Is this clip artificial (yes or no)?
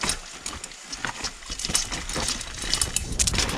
no